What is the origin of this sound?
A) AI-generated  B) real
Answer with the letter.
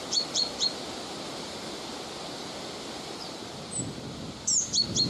A